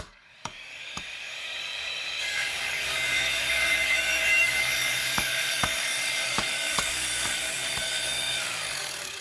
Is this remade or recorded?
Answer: remade